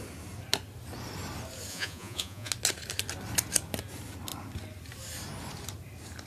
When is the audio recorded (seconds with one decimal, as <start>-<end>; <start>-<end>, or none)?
0.0-1.7; 2.5-6.3